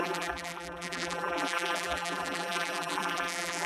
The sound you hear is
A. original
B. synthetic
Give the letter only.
B